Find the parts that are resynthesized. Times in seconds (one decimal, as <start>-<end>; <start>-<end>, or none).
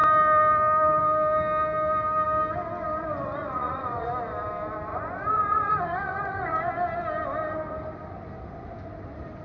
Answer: 3.1-4.1; 4.9-6.7